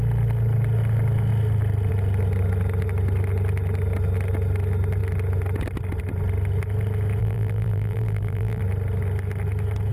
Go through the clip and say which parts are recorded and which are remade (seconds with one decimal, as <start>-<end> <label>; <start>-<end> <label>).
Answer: 0.0-7.2 recorded; 7.2-8.6 remade; 8.6-9.9 recorded